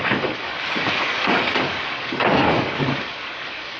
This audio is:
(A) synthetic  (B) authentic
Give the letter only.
A